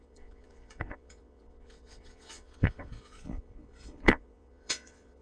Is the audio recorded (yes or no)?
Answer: no